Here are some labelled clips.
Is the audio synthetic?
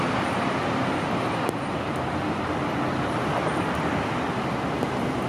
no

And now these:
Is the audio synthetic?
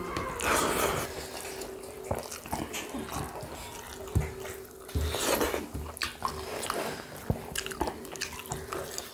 no